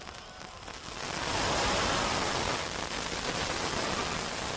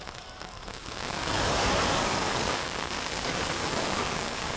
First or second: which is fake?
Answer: second